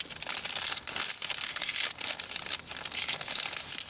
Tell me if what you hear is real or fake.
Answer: real